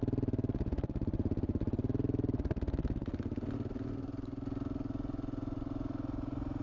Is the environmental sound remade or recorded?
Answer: recorded